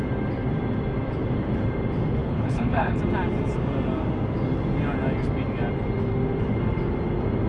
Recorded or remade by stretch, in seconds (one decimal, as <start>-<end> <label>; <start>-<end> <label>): 0.0-2.2 recorded; 2.2-3.0 remade; 3.0-7.5 recorded